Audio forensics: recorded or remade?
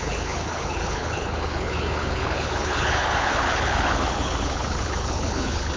remade